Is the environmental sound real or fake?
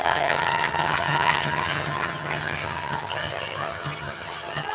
fake